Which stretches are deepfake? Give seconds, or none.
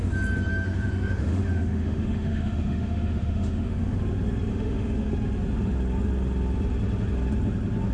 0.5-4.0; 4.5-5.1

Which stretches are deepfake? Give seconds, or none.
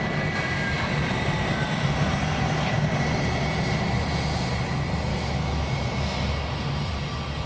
5.1-5.7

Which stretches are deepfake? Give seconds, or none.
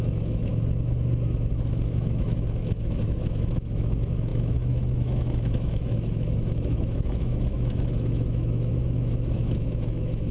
0.0-0.5; 1.7-10.3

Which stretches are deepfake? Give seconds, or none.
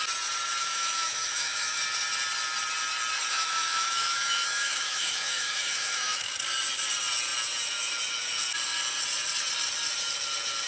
0.6-1.8; 3.3-6.3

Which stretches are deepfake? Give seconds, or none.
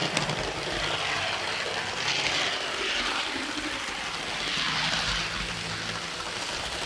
none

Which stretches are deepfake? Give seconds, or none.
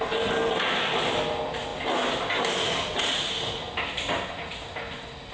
none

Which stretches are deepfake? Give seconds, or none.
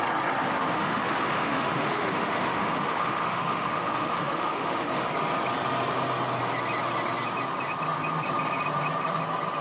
0.7-5.1